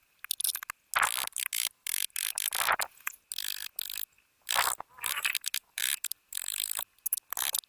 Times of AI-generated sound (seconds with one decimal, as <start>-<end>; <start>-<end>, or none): none